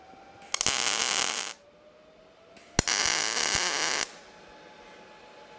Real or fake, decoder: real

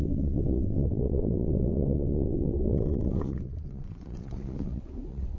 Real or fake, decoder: fake, vocoder, WaveNeXt